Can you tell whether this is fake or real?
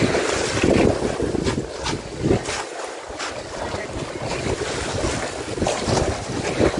real